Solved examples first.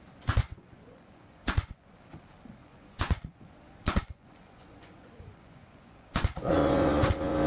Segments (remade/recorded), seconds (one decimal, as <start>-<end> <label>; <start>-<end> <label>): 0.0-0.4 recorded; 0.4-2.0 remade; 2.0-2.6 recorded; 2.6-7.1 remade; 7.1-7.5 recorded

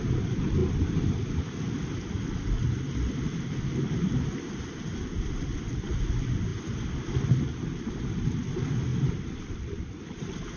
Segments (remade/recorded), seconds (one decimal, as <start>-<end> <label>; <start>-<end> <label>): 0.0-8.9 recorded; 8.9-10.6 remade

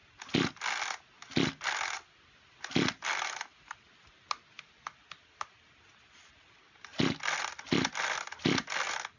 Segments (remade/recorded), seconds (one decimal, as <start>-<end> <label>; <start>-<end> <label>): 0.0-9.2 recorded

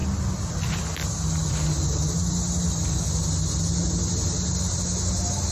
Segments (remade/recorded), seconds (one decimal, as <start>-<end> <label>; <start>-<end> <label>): 0.0-5.5 recorded

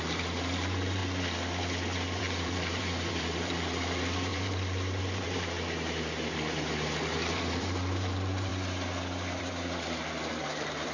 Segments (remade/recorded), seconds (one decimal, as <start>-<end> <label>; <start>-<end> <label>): 0.0-1.0 remade; 1.0-2.2 recorded; 2.2-8.5 remade; 8.5-9.4 recorded; 9.4-10.9 remade

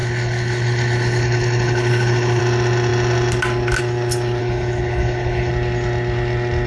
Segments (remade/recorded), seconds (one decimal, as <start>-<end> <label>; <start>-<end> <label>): 0.0-2.4 remade; 2.4-4.4 recorded; 4.4-5.5 remade; 5.5-6.7 recorded